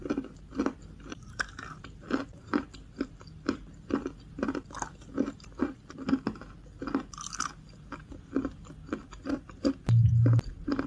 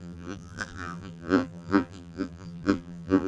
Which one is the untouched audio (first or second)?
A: first